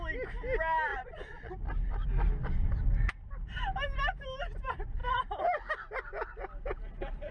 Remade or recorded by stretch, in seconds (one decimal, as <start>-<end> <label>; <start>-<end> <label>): 0.0-0.9 recorded; 0.9-1.5 remade; 1.5-7.3 recorded